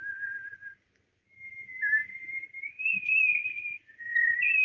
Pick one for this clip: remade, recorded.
recorded